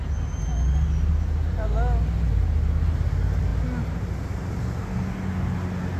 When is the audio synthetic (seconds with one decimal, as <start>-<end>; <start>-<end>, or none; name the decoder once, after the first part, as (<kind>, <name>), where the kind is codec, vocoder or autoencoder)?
none